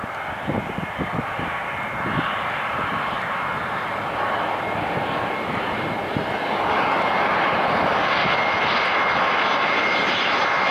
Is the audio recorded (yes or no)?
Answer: yes